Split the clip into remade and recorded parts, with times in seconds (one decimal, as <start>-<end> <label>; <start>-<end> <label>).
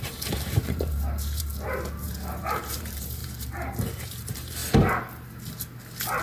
0.0-1.5 remade; 1.5-2.0 recorded; 2.0-4.6 remade; 4.6-6.2 recorded